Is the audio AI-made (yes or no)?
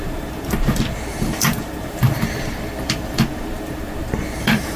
yes